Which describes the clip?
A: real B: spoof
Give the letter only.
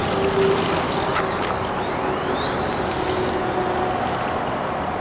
A